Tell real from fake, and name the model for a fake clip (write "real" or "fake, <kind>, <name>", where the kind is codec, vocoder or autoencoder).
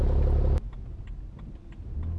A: real